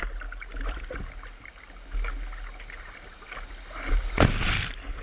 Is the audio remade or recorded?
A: recorded